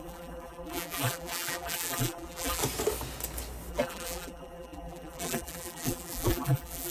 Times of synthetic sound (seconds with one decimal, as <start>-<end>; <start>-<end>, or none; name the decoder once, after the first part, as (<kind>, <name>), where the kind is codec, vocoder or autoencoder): 0.0-2.6 (vocoder, BigVGAN v2); 3.7-6.9